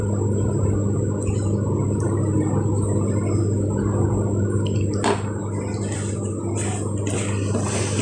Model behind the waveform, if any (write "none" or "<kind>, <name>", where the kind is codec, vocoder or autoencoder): none